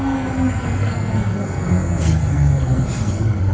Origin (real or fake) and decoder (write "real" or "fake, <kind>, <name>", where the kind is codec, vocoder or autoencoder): fake, codec, SNAC